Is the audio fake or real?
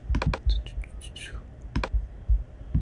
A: real